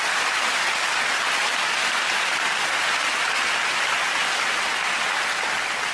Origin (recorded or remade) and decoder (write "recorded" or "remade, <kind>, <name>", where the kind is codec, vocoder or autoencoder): recorded